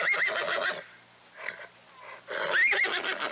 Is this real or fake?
real